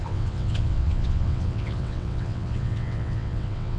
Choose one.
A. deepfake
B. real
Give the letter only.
A